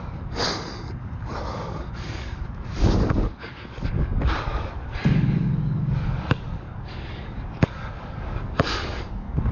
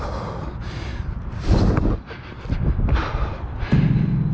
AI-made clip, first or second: first